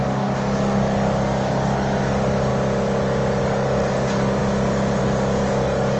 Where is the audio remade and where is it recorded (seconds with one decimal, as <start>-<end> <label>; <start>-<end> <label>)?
0.0-2.5 remade; 2.5-3.4 recorded; 3.4-4.4 remade; 4.4-5.0 recorded; 5.0-6.0 remade